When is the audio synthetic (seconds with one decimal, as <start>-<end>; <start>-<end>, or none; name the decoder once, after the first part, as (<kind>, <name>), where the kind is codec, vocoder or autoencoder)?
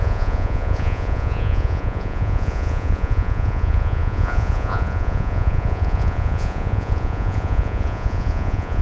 0.0-8.8 (vocoder, Vocos)